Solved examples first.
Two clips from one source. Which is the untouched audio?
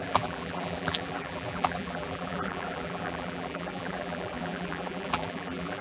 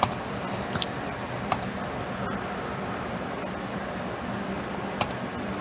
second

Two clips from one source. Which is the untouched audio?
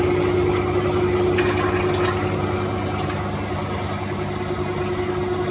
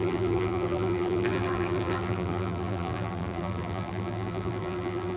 first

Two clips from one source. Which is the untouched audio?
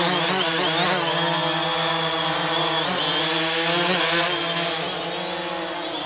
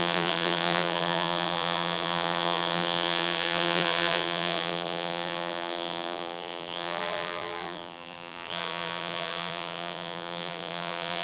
first